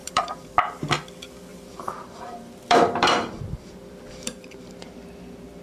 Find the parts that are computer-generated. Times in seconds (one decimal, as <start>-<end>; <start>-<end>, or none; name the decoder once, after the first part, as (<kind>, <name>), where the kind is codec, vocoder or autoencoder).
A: 0.0-0.8 (vocoder, BigVGAN v2); 1.5-4.9